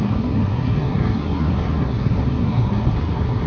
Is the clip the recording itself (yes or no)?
no